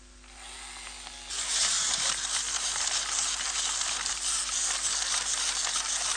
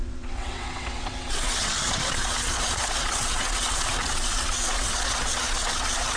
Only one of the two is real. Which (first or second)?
first